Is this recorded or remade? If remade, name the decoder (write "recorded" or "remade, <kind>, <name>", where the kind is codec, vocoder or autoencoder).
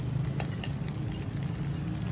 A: recorded